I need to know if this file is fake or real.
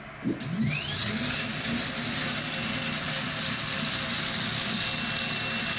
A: real